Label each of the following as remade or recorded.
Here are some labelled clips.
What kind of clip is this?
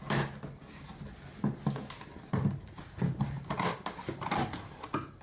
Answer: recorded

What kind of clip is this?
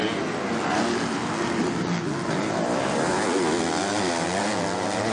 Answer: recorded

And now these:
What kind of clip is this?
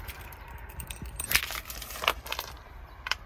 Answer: remade